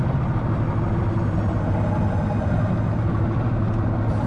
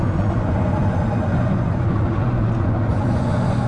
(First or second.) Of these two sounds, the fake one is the second